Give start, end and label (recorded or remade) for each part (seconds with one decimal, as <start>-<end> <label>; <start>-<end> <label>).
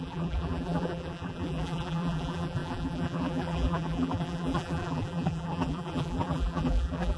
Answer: 0.0-7.2 remade